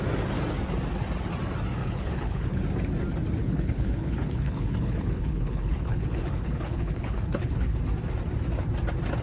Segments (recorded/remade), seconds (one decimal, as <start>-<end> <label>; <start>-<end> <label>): 0.0-1.8 recorded; 1.8-2.6 remade; 2.6-3.4 recorded; 3.4-7.8 remade; 7.8-9.2 recorded